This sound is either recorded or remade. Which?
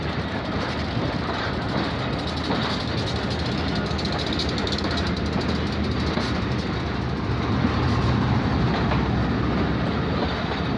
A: recorded